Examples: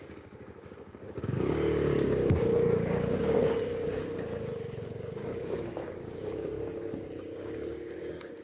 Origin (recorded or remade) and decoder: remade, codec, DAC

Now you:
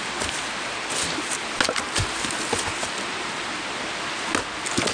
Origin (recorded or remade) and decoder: recorded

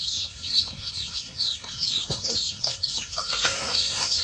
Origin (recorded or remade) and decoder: remade, codec, SNAC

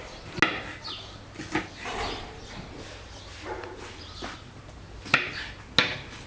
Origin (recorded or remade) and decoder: recorded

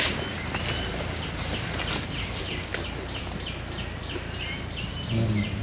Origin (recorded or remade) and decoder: recorded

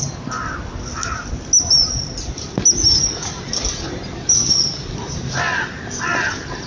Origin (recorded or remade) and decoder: recorded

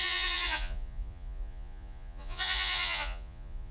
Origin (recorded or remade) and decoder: remade, vocoder, Vocos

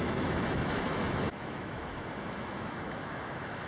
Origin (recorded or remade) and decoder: remade, autoencoder, DAC-VAE